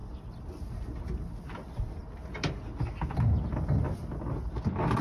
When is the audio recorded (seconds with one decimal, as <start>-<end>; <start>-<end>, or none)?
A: 0.0-5.0